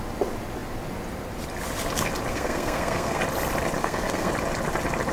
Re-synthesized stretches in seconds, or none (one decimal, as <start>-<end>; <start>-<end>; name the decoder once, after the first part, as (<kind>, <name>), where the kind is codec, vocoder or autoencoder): 2.3-3.2 (codec, SNAC); 3.8-4.3